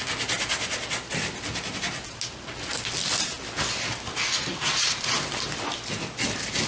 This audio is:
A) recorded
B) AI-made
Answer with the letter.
A